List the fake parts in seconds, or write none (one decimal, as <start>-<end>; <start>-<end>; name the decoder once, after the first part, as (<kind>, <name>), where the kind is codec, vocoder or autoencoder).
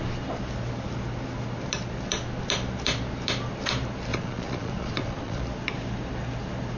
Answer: 4.1-5.4 (vocoder, Vocos)